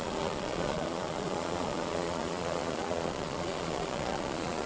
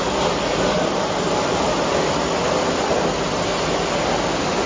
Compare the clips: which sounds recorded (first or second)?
second